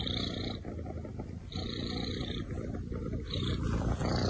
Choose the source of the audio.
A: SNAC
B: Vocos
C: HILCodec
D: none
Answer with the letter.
D